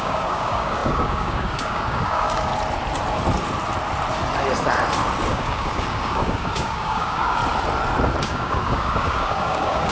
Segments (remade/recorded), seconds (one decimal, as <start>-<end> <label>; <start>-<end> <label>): 0.0-2.5 remade; 2.5-5.3 recorded; 5.3-7.4 remade; 7.4-8.2 recorded; 8.2-9.9 remade